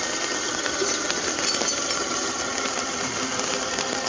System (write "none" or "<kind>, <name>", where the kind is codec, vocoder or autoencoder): none